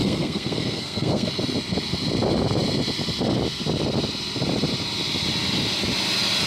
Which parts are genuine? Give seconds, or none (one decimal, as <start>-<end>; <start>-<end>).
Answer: 1.3-6.5